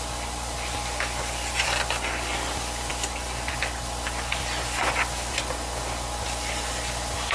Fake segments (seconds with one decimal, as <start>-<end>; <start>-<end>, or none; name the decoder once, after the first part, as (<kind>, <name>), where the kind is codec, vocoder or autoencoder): none